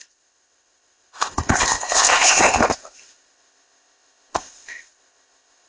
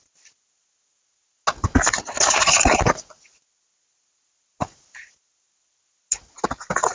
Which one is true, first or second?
second